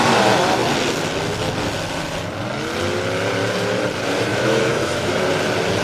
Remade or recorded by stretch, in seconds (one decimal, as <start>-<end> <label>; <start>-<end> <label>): 0.0-4.3 recorded; 4.3-5.2 remade; 5.2-5.8 recorded